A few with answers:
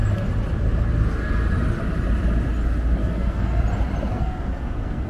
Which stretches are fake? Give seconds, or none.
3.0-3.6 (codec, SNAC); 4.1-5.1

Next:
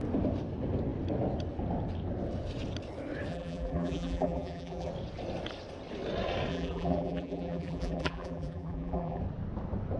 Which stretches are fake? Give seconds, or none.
3.3-4.9 (vocoder, BigVGAN v2); 6.5-9.2

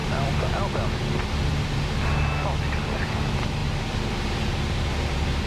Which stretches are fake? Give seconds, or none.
0.0-2.1 (vocoder, BigVGAN v2)

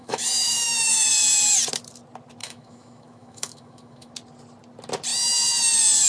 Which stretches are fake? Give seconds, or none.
0.0-1.1 (autoencoder, DAC-VAE); 2.4-4.1

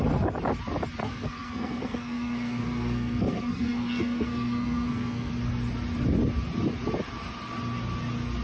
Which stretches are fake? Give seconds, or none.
1.0-5.3 (codec, SNAC)